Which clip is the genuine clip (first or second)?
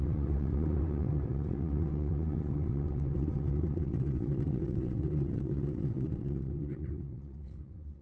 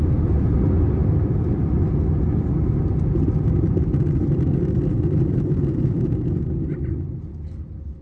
second